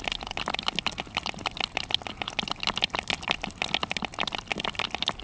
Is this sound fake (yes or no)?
no